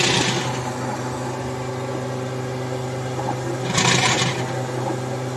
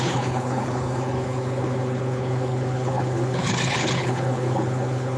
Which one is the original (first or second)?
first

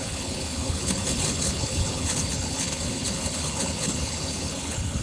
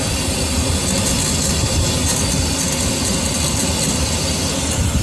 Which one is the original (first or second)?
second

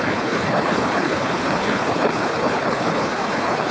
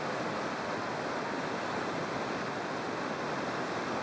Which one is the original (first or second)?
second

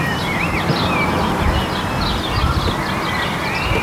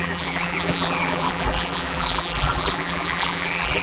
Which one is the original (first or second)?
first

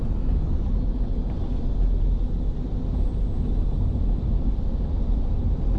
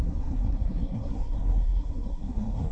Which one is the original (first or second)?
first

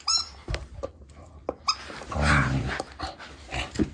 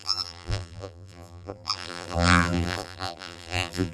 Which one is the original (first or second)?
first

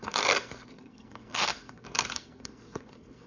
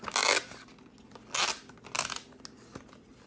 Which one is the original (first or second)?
second